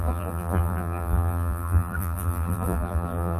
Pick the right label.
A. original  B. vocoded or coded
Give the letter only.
B